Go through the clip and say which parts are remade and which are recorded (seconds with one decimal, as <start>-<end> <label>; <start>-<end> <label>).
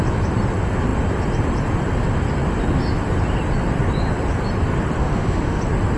0.0-5.0 recorded; 5.0-5.6 remade; 5.6-6.0 recorded